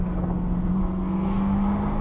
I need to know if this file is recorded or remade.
remade